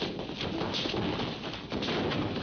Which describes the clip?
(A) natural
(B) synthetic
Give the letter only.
A